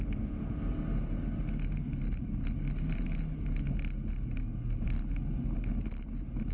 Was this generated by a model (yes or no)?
no